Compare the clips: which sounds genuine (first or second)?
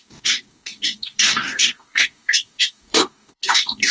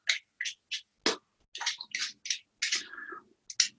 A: second